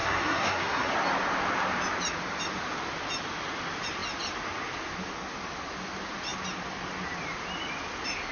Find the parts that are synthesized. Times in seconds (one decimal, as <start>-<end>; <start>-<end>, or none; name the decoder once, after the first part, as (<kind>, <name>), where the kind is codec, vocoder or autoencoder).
0.0-0.9 (codec, SNAC)

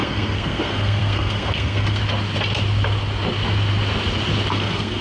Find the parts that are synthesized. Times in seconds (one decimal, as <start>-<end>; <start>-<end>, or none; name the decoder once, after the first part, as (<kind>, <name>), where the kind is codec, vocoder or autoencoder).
0.0-2.0 (codec, SNAC); 4.5-5.0

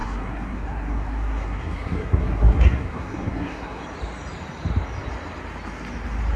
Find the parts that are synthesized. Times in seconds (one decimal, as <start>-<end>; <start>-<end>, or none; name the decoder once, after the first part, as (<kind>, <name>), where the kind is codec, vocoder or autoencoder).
0.0-3.8 (codec, SNAC)

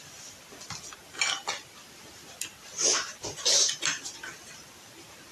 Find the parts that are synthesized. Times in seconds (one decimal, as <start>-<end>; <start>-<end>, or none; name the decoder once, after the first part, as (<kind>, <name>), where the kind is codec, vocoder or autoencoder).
none

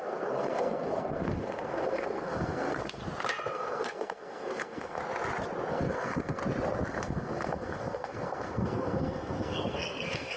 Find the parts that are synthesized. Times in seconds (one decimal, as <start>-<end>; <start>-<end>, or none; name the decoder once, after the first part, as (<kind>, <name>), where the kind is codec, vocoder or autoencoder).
0.0-3.0 (codec, SNAC); 3.5-5.0; 5.7-6.4; 6.9-10.4

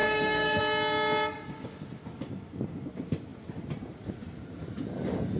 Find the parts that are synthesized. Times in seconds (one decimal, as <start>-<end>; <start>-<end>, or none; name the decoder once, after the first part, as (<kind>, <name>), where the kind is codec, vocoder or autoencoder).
0.0-0.6 (codec, SNAC)